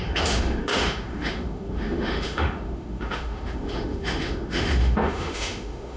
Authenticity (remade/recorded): remade